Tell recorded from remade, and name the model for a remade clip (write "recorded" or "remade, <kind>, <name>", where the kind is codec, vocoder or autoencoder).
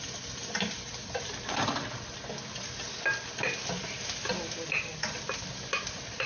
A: recorded